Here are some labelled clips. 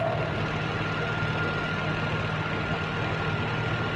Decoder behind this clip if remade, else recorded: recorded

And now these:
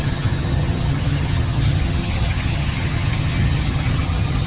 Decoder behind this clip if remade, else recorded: remade, vocoder, HiFi-GAN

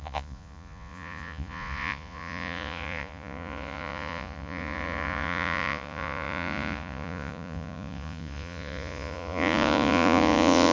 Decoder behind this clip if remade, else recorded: remade, vocoder, Vocos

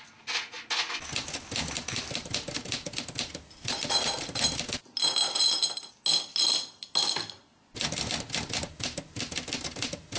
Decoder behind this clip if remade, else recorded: recorded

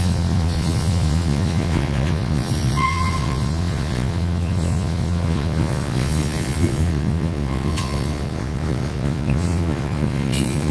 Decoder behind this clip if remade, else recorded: remade, vocoder, Vocos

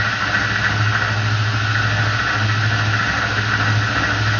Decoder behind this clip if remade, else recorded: recorded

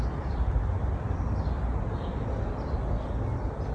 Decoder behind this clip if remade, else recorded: recorded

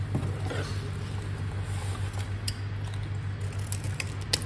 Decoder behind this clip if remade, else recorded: recorded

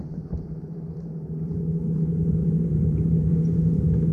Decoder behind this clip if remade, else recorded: remade, vocoder, BigVGAN v2